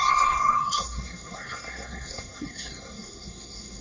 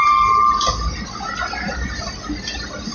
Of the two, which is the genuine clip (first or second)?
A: second